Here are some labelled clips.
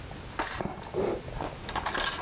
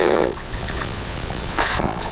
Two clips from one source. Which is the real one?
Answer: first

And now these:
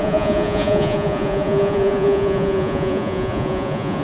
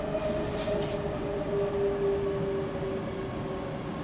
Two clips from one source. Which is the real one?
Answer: second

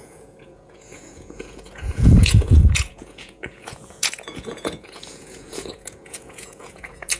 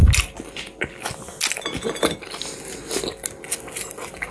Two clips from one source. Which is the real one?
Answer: second